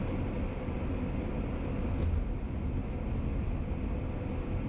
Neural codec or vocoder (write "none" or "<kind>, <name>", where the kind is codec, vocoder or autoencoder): none